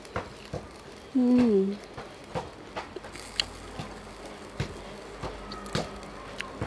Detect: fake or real real